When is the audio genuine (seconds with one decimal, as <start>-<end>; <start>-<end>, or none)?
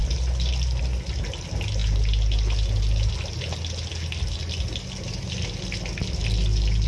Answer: 0.0-6.9